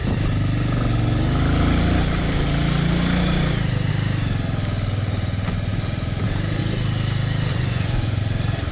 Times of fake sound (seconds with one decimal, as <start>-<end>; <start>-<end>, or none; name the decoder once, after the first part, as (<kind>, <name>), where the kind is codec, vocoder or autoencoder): 7.5-8.2 (vocoder, Vocos)